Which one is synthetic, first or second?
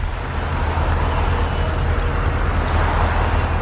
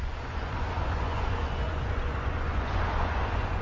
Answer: second